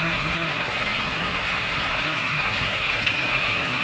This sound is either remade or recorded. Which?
remade